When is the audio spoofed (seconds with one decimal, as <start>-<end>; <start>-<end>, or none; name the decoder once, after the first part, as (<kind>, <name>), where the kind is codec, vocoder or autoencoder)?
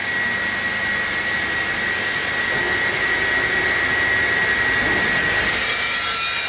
none